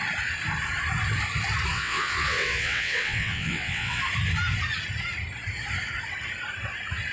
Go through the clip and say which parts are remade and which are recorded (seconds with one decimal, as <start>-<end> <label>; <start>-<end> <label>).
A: 0.0-1.7 recorded; 1.7-4.0 remade; 4.0-7.1 recorded